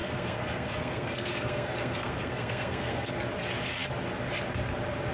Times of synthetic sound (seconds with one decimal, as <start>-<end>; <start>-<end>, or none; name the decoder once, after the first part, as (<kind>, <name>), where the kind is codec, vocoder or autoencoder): 0.0-3.1 (codec, SNAC)